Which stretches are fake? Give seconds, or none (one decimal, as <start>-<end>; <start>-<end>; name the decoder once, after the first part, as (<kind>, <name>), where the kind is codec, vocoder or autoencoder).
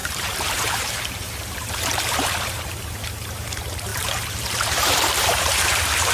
0.0-6.1 (vocoder, BigVGAN v2)